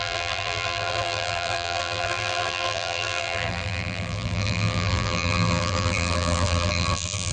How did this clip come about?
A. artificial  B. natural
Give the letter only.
A